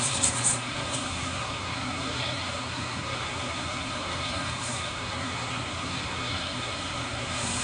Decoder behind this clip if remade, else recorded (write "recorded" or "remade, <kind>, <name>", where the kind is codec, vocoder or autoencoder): remade, codec, SNAC